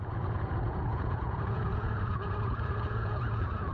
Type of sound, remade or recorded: remade